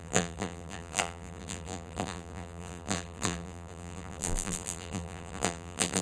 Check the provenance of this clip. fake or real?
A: fake